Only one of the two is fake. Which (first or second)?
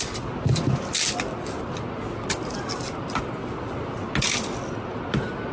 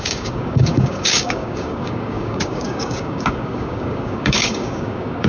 second